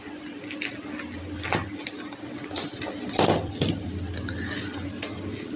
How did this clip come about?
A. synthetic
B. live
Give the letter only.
B